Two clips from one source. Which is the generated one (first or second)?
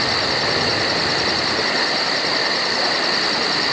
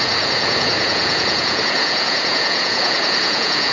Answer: second